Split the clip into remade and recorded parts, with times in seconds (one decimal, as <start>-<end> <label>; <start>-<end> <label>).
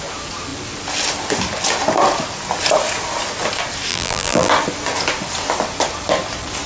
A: 0.0-3.9 recorded; 3.9-4.5 remade; 4.5-6.7 recorded